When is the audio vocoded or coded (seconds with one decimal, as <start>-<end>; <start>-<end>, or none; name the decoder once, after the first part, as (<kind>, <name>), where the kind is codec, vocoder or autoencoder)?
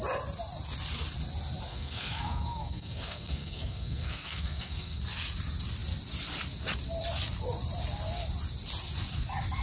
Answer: 1.7-5.0 (codec, SNAC)